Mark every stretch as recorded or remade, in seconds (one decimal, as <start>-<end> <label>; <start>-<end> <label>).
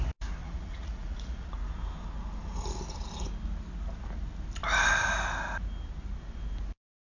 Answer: 0.0-0.4 recorded; 0.4-1.5 remade; 1.5-7.1 recorded